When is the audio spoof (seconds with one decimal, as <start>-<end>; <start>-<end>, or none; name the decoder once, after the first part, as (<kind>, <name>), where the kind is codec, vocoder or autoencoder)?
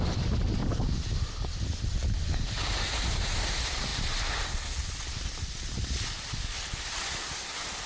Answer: none